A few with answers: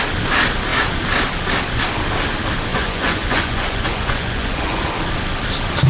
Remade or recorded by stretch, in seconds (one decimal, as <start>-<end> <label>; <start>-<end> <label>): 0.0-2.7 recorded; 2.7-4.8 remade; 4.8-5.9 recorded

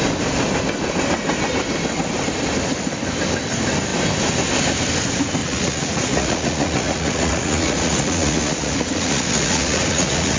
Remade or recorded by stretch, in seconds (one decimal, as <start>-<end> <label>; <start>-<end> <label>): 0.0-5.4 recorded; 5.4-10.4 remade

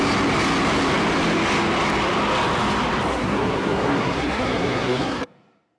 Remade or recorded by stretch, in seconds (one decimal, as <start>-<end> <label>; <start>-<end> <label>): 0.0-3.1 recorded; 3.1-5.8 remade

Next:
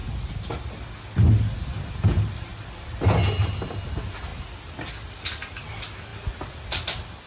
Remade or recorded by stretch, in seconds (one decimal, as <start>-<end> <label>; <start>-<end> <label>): 0.0-7.3 recorded